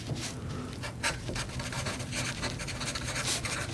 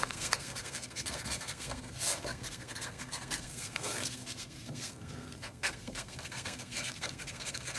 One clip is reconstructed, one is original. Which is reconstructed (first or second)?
second